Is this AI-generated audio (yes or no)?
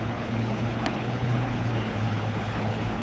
yes